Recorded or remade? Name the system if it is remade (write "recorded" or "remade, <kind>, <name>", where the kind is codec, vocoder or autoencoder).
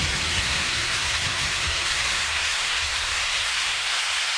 remade, codec, SNAC